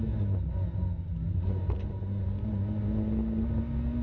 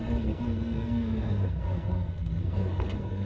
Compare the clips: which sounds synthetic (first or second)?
second